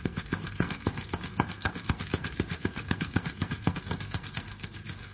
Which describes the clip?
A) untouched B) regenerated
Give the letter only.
B